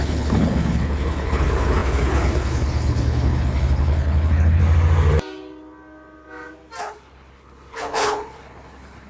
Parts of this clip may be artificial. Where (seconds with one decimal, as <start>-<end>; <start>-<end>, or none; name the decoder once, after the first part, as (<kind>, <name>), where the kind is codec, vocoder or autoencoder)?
0.0-4.6 (codec, HILCodec); 6.8-9.1